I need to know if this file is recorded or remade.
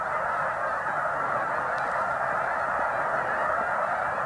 recorded